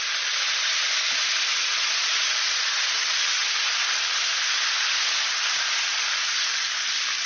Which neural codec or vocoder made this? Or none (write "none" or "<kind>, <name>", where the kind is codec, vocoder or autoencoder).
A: none